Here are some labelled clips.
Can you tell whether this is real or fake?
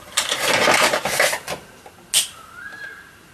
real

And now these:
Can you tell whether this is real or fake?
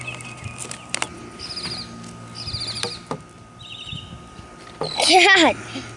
real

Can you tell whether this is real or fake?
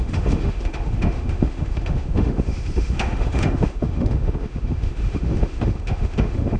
fake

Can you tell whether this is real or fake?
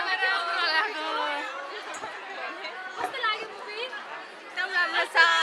real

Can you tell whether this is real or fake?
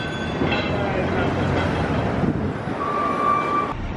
real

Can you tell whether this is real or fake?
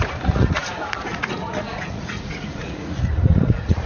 fake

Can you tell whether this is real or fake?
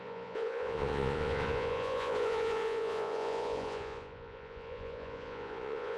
fake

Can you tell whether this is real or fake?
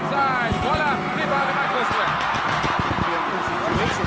real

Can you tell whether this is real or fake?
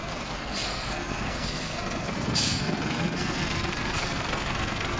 fake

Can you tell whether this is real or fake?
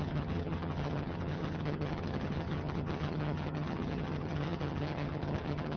fake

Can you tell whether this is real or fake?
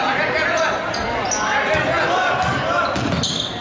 real